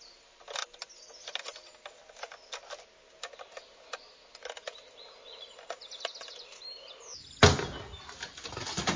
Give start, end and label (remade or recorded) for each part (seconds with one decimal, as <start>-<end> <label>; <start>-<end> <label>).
0.0-9.0 recorded